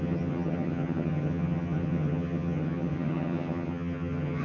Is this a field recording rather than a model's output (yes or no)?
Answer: no